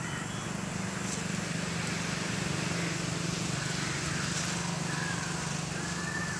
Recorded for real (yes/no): yes